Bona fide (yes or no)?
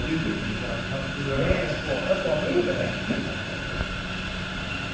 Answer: yes